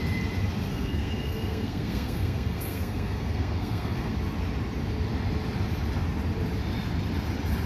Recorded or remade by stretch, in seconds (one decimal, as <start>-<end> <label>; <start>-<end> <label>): 0.0-0.7 recorded; 0.7-4.1 remade; 4.1-7.7 recorded